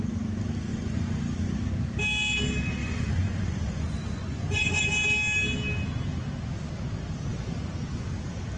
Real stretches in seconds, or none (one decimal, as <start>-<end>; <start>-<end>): 0.0-0.7; 1.2-2.8; 4.8-8.6